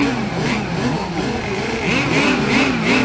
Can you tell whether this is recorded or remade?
recorded